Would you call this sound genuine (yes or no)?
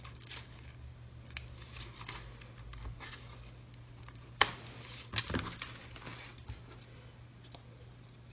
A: yes